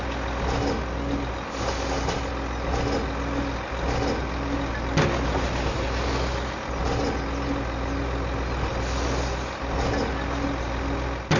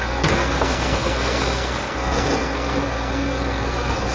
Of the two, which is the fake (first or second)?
second